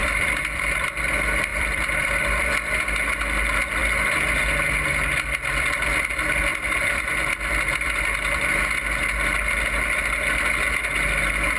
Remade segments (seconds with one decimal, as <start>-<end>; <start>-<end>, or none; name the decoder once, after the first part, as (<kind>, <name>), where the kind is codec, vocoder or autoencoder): 0.0-0.9 (vocoder, BigVGAN v2); 1.5-2.4; 6.5-7.1